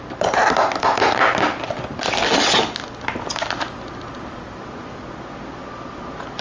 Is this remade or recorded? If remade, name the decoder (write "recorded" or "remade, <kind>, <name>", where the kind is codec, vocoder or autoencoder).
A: recorded